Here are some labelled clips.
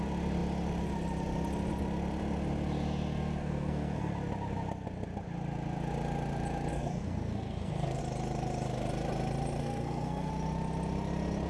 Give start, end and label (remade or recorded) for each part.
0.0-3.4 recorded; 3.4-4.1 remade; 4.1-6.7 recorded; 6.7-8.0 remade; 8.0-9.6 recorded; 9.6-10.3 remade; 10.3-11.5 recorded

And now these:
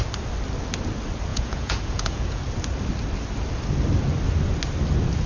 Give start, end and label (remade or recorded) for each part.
0.0-1.3 recorded; 1.3-2.4 remade; 2.4-5.3 recorded

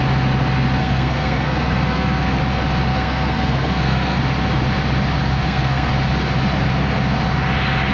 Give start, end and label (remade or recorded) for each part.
0.0-0.8 recorded; 0.8-2.4 remade; 2.4-2.9 recorded; 2.9-4.2 remade; 4.2-5.2 recorded; 5.2-5.9 remade; 5.9-7.9 recorded